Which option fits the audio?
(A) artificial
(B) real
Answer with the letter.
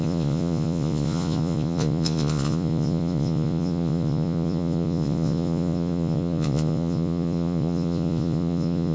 A